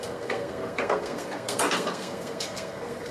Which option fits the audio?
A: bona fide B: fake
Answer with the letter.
B